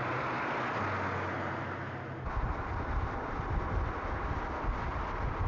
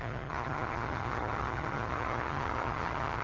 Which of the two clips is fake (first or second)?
second